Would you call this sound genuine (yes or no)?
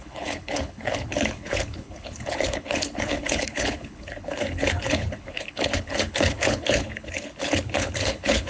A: no